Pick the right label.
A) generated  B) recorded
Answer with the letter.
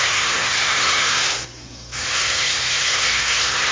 A